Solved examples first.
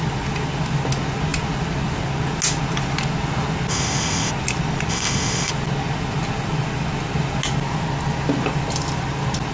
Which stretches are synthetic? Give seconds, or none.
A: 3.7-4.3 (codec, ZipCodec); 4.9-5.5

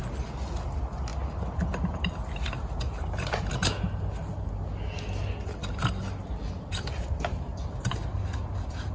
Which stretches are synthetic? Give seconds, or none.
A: none

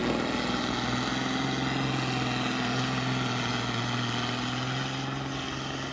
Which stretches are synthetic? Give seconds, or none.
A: none